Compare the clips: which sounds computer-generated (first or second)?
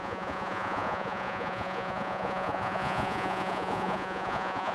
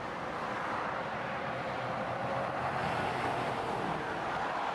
first